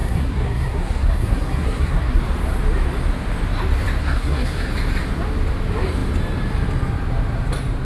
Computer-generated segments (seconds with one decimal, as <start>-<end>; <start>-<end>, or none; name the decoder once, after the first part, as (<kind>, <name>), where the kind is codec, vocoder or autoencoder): 0.0-2.2 (codec, SNAC); 4.0-4.7